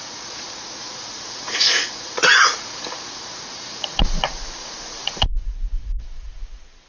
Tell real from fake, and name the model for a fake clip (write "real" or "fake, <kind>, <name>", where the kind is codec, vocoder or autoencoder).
fake, vocoder, Vocos